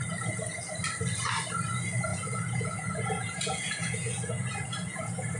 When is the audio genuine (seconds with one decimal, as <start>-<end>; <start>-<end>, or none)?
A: 0.0-2.1